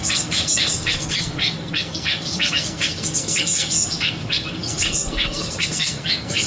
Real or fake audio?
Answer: fake